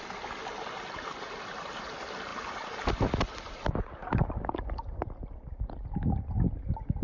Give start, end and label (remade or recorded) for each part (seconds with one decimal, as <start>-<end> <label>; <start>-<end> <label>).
0.0-7.0 recorded